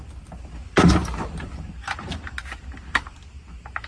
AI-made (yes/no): no